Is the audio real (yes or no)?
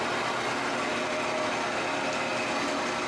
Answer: yes